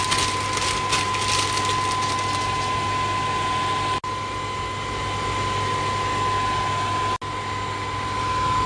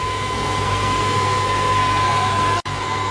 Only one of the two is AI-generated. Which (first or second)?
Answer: second